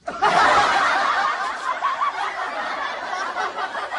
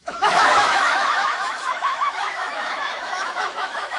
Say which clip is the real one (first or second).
first